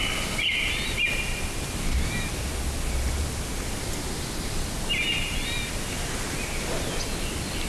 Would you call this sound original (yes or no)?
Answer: yes